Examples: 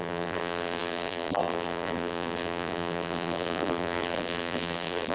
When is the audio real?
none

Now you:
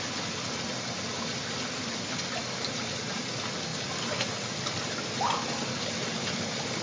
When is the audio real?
0.0-6.8

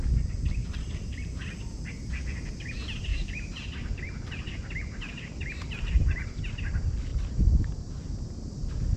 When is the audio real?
0.0-0.6; 2.2-3.1; 6.5-7.1; 7.9-9.0

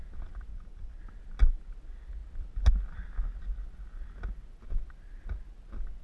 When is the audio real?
0.0-0.5; 1.0-6.0

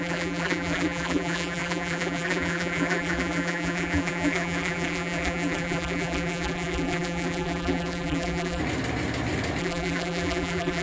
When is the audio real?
8.6-9.6